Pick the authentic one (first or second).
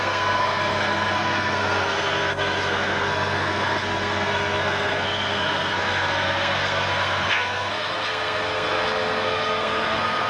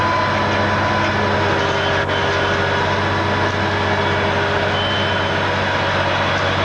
second